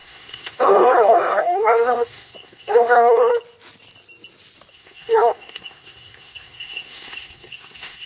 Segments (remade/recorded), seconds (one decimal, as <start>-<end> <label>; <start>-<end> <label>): 0.0-3.3 remade; 3.3-4.7 recorded; 4.7-8.1 remade